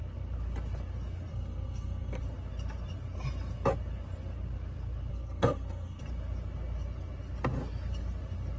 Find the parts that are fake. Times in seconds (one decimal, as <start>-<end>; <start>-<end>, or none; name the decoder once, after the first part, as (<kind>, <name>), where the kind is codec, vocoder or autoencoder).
1.3-2.2 (codec, SNAC); 5.1-6.0

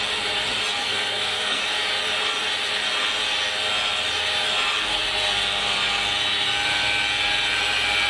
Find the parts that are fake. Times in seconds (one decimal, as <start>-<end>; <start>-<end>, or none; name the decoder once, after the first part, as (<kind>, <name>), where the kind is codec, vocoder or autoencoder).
0.8-1.6 (codec, SNAC)

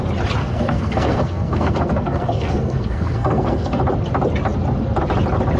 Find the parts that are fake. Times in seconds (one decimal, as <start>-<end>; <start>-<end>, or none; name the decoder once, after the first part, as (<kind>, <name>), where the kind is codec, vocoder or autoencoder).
0.4-3.8 (codec, SNAC)

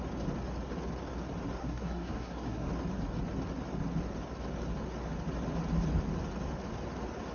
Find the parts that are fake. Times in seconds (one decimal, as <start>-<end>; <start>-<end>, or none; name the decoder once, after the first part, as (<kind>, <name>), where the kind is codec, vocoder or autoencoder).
1.6-2.7 (codec, SNAC)